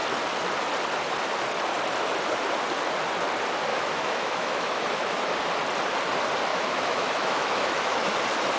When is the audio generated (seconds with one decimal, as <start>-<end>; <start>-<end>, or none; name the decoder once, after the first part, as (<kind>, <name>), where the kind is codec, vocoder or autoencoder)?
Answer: 3.7-5.3 (autoencoder, DAC-VAE); 6.5-8.2